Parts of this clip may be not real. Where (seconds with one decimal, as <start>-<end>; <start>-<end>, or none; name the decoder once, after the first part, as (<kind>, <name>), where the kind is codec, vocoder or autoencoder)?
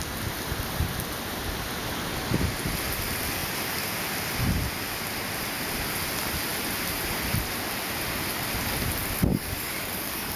9.3-10.4 (codec, DAC)